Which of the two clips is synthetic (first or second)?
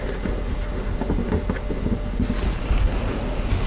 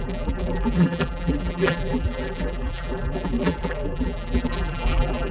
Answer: second